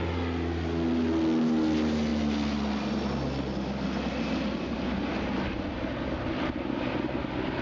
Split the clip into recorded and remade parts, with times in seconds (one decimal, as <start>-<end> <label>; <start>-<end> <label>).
0.0-7.6 recorded